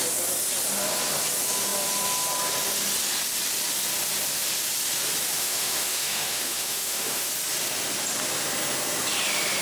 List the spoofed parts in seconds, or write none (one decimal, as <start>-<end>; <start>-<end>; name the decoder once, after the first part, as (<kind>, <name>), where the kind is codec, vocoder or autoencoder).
5.4-7.3 (autoencoder, DAC-VAE)